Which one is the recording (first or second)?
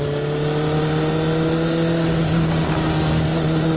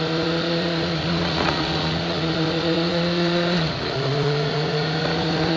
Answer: first